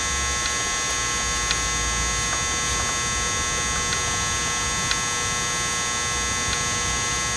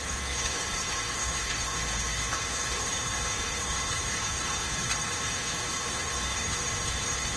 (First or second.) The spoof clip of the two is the second